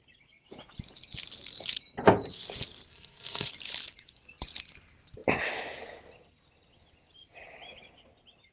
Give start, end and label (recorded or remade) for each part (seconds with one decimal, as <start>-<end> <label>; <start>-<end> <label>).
0.0-2.9 recorded; 2.9-3.5 remade; 3.5-8.5 recorded